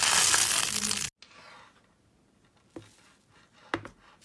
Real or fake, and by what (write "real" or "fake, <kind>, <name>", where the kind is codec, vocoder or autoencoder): real